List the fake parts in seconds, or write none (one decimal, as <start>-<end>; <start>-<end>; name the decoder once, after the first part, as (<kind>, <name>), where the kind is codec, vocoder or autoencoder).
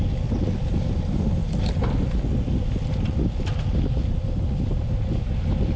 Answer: none